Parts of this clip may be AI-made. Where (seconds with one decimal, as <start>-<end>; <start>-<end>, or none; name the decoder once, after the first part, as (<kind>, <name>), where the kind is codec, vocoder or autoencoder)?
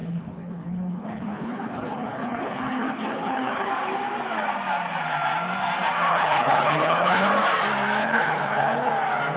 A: 0.0-3.7 (codec, HILCodec); 6.1-7.3; 8.0-8.9